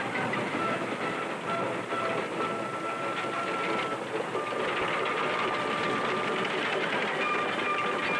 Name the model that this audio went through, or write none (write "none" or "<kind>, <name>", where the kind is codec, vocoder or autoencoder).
none